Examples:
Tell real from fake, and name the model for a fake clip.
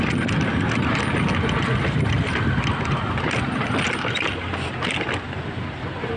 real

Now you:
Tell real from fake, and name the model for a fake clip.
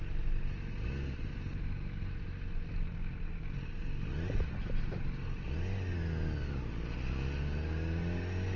real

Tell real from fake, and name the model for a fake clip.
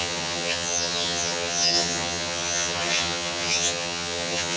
fake, vocoder, HiFi-GAN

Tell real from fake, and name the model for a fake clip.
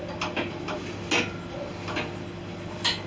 real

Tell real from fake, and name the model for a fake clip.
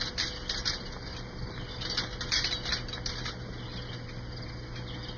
real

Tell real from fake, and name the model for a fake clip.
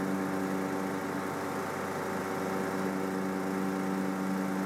real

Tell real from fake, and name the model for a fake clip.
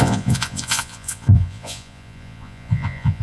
fake, vocoder, Vocos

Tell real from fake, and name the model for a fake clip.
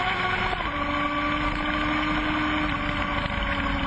real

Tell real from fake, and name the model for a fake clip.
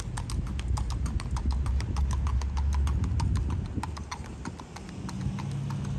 real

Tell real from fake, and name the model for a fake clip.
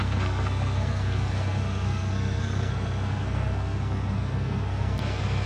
fake, codec, SNAC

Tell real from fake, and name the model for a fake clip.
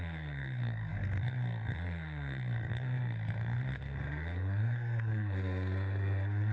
fake, codec, SNAC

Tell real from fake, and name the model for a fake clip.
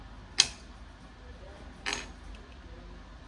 real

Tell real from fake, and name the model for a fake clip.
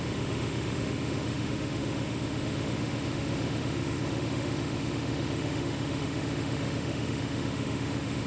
fake, autoencoder, DAC-VAE